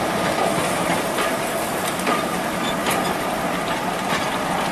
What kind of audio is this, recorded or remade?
recorded